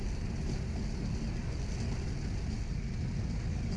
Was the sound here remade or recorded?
recorded